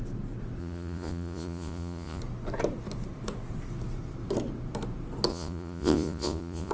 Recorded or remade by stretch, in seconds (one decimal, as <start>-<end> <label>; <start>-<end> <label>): 0.0-0.6 recorded; 0.6-2.2 remade; 2.2-5.3 recorded; 5.3-6.7 remade